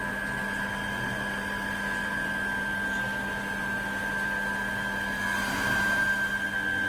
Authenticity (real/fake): real